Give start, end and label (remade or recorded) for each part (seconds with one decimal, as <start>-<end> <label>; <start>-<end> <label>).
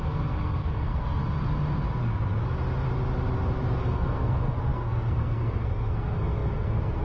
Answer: 0.0-1.2 remade; 1.2-3.8 recorded; 3.8-7.0 remade